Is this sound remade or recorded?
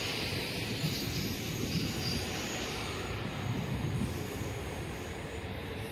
recorded